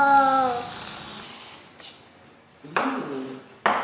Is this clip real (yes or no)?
yes